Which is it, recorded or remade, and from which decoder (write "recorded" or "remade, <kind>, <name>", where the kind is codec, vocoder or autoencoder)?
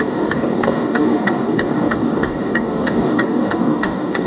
remade, codec, DAC